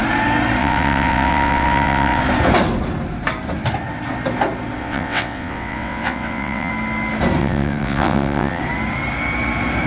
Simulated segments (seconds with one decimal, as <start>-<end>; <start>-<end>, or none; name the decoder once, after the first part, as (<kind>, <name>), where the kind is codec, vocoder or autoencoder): 0.6-2.2 (vocoder, WaveNeXt); 4.8-6.7; 7.4-8.6